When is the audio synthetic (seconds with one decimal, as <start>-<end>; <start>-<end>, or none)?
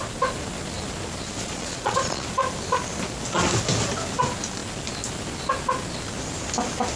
1.4-2.3